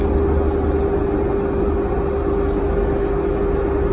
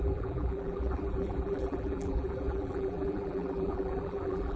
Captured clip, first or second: first